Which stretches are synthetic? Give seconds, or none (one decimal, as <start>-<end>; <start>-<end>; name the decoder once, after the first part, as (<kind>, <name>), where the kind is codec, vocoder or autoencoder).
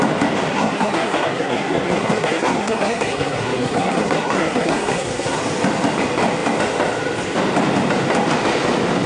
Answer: 0.5-5.4 (codec, SNAC)